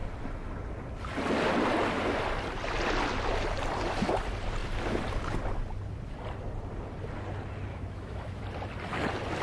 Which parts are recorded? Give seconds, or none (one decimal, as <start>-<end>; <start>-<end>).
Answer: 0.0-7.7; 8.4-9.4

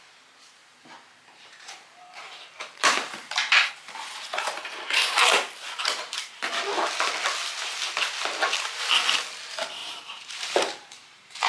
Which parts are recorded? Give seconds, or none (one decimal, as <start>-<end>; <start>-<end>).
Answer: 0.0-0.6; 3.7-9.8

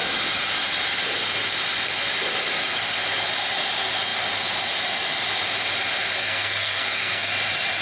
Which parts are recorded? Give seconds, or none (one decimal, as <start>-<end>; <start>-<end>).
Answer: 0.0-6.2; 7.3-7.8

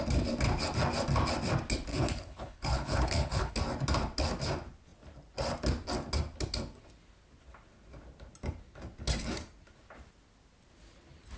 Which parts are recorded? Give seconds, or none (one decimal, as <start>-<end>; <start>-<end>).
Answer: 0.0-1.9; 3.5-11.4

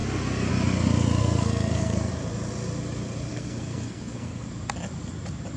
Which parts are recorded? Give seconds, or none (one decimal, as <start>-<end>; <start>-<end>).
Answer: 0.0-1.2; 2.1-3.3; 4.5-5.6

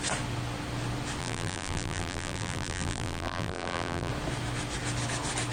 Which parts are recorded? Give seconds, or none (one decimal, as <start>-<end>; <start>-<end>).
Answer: 0.0-1.2; 4.1-5.5

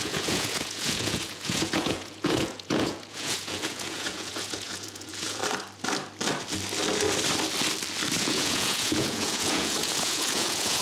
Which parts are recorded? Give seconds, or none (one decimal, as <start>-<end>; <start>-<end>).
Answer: 5.4-8.2

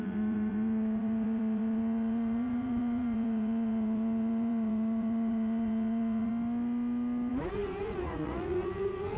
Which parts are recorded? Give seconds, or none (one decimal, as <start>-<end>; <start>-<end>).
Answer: 6.3-7.3